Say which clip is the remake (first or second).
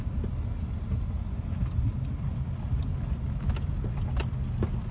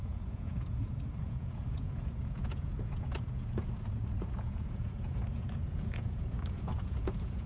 second